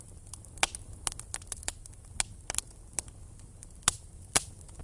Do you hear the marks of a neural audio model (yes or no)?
no